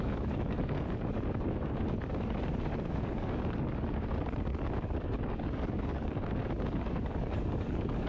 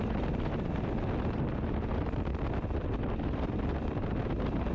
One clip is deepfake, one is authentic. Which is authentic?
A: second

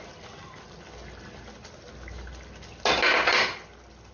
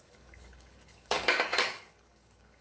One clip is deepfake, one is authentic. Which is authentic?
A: first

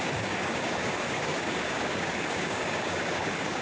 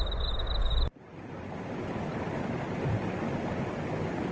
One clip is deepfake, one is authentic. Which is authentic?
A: second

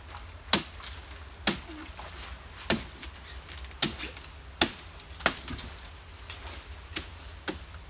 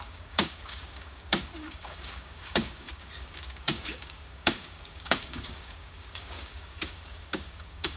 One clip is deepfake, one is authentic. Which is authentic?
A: first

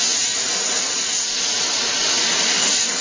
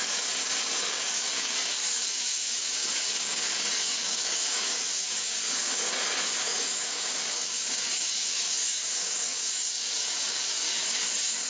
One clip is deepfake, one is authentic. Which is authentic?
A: first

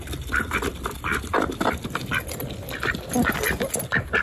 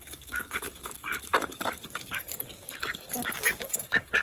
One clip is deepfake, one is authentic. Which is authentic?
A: first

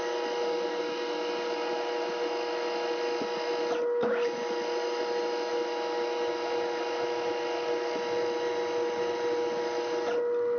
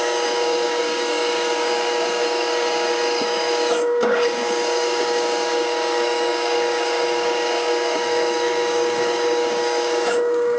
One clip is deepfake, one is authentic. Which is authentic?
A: first